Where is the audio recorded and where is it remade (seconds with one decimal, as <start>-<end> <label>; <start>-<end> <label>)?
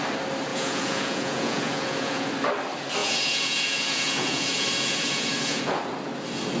0.0-0.5 recorded; 0.5-2.3 remade; 2.3-3.0 recorded; 3.0-5.8 remade; 5.8-6.6 recorded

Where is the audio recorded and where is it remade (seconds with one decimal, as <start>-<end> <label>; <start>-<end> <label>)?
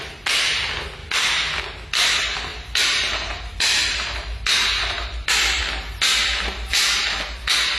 0.0-2.5 recorded; 2.5-5.6 remade; 5.6-7.8 recorded